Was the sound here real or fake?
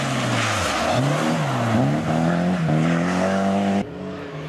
real